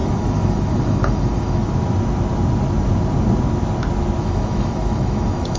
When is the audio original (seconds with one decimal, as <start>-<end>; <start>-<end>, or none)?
1.6-4.2